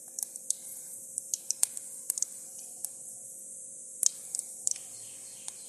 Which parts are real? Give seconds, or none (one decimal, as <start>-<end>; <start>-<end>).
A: 0.0-0.7; 1.4-5.7